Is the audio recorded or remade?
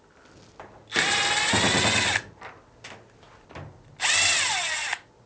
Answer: recorded